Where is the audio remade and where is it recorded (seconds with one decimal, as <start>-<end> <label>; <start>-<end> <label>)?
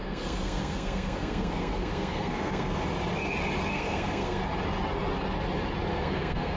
0.0-2.8 remade; 2.8-3.7 recorded; 3.7-4.4 remade; 4.4-5.9 recorded; 5.9-6.6 remade